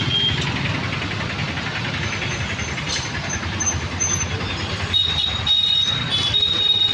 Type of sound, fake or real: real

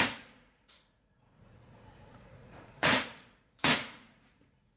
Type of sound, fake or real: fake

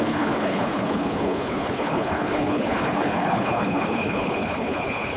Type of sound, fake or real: fake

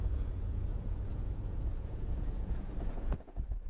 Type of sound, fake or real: fake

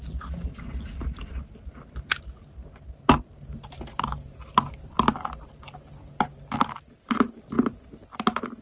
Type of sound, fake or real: real